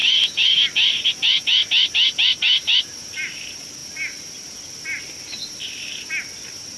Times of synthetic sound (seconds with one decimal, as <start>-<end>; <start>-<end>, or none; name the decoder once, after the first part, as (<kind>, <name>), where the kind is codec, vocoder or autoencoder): none